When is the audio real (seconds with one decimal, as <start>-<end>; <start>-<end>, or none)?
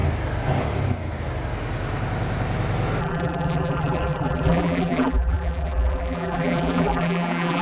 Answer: 0.0-3.0